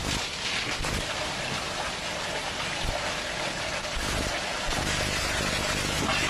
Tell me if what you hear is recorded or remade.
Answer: recorded